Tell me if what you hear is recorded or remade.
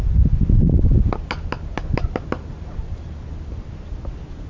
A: recorded